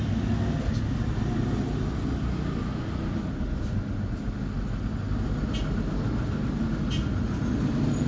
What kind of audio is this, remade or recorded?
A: recorded